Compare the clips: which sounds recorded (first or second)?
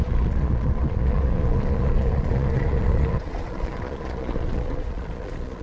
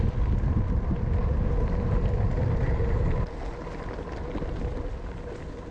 second